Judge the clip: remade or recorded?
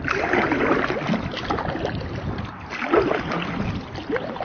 recorded